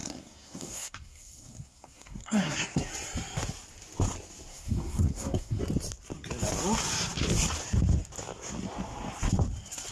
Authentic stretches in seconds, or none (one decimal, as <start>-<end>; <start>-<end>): 2.9-4.5; 5.6-9.9